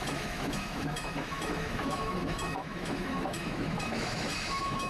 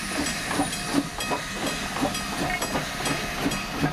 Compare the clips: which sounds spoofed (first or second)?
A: first